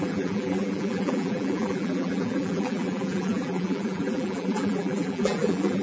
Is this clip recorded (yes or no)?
no